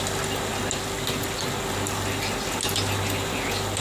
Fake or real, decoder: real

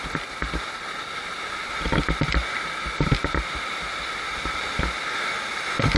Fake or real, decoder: real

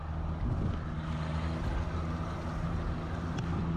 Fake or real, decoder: real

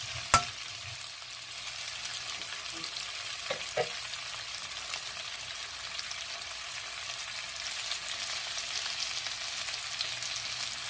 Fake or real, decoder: real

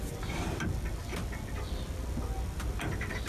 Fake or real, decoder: real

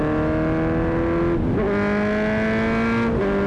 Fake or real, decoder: real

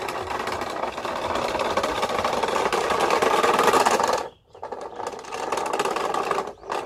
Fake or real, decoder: real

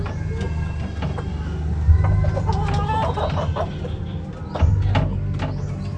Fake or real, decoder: real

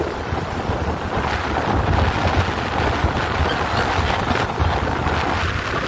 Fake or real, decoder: real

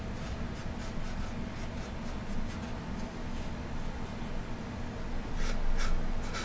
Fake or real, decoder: real